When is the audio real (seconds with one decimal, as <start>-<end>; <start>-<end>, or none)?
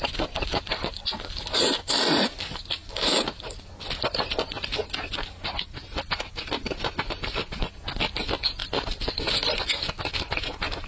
0.0-10.9